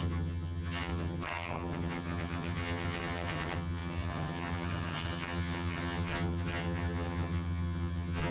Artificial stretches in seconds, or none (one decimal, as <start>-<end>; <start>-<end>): 0.0-8.3